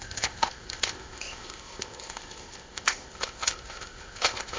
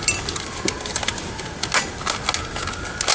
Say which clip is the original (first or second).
second